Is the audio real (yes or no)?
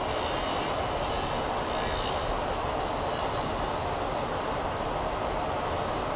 yes